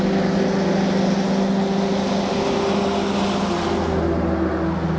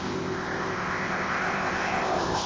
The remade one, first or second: second